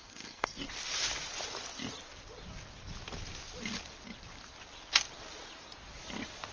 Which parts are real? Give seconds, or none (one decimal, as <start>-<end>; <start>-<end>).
0.6-6.5